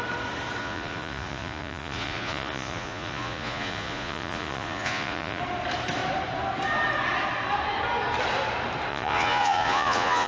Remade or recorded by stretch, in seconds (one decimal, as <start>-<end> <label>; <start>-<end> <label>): 0.0-0.6 recorded; 0.6-5.4 remade; 5.4-8.9 recorded; 8.9-10.3 remade